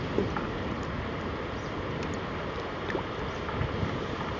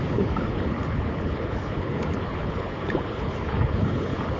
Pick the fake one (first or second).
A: second